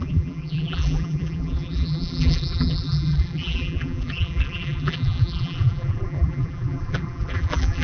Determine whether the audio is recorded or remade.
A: remade